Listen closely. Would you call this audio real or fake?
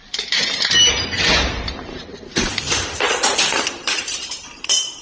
fake